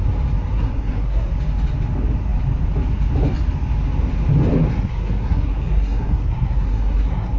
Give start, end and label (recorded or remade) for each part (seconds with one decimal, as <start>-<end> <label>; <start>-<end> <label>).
0.0-0.5 recorded; 0.5-1.3 remade; 1.3-4.7 recorded; 4.7-7.4 remade